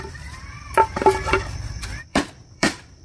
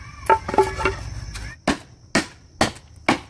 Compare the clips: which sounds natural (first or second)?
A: second